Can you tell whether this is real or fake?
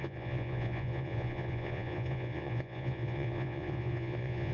fake